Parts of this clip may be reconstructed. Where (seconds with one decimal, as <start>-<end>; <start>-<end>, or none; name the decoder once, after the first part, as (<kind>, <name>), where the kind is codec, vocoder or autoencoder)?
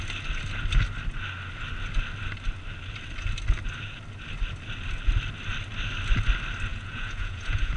6.7-7.8 (vocoder, Vocos)